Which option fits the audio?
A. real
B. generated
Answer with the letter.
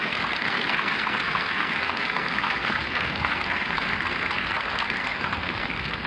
B